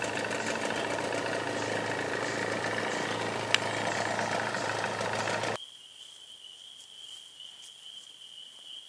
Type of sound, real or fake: real